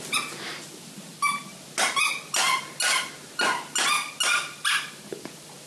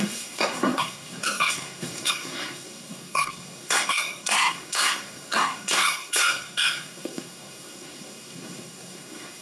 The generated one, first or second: second